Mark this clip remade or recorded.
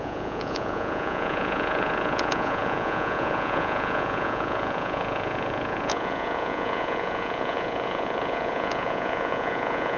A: remade